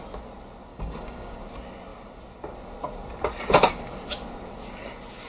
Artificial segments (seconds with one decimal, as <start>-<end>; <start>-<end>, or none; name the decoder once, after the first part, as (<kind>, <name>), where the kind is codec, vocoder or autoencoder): 0.7-1.4 (codec, DAC)